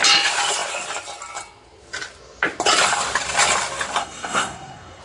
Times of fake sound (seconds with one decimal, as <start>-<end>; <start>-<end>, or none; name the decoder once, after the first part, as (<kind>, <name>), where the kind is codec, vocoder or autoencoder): 4.0-5.0 (codec, SNAC)